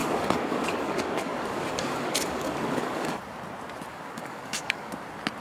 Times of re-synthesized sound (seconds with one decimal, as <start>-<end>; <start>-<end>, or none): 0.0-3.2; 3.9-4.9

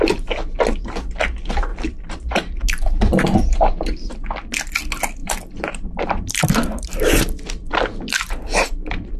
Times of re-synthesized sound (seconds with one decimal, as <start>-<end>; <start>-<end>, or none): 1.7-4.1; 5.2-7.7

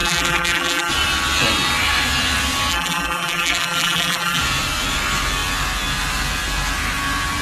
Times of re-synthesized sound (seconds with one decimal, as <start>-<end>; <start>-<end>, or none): 0.0-0.9; 2.7-4.4

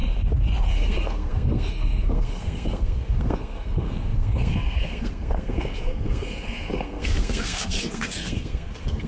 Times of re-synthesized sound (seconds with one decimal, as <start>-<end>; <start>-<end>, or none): 0.7-9.1

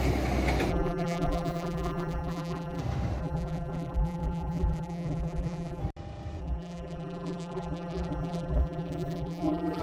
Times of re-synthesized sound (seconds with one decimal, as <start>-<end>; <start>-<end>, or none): 0.7-2.8; 3.2-5.8; 6.4-9.8